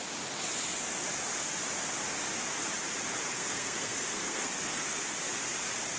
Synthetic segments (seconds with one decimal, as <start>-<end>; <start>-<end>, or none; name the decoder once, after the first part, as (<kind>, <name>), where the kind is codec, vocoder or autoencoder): 3.3-5.0 (codec, SNAC)